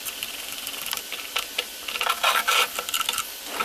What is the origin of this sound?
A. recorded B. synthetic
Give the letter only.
A